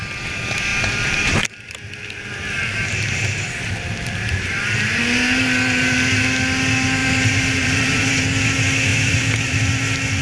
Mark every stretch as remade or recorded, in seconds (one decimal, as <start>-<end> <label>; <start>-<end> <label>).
0.0-0.7 recorded; 0.7-5.0 remade; 5.0-7.0 recorded; 7.0-8.2 remade; 8.2-8.9 recorded; 8.9-9.6 remade; 9.6-10.2 recorded